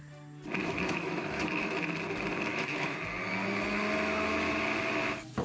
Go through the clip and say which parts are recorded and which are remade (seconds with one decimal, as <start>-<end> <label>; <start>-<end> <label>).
0.0-0.6 recorded; 0.6-1.8 remade; 1.8-2.5 recorded; 2.5-3.0 remade; 3.0-5.4 recorded